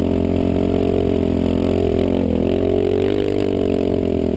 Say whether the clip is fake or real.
real